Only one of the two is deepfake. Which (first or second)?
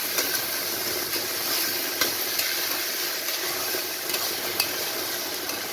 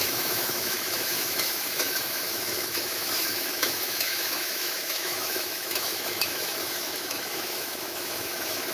second